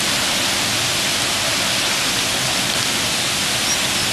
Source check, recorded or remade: recorded